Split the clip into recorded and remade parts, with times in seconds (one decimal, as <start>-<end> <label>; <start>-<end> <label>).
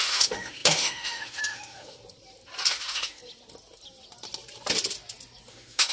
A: 0.0-2.0 remade; 2.0-2.7 recorded; 2.7-3.2 remade; 3.2-5.5 recorded; 5.5-5.9 remade